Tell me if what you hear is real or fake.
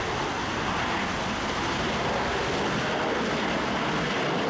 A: real